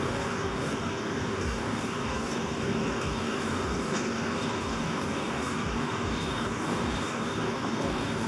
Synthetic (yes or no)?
yes